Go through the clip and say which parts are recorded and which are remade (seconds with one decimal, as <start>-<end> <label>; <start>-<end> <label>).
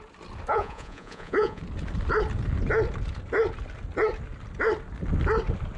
0.0-0.5 recorded; 0.5-1.6 remade; 1.6-5.8 recorded